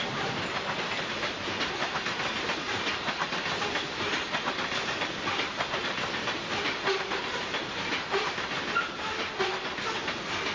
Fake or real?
real